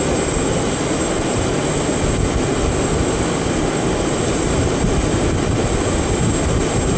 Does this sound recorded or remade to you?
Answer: recorded